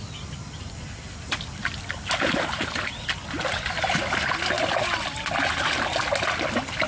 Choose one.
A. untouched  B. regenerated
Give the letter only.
A